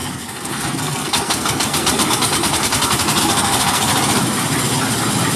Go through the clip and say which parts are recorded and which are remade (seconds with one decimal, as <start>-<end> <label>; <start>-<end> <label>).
0.0-3.9 remade; 3.9-5.4 recorded